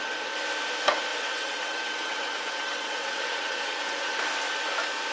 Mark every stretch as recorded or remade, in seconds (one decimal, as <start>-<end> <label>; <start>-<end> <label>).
0.0-1.1 recorded; 1.1-4.1 remade; 4.1-5.1 recorded